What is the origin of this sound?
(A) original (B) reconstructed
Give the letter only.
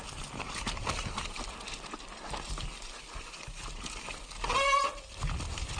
A